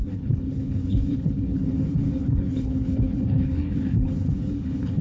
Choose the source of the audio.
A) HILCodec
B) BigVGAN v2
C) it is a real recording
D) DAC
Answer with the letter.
A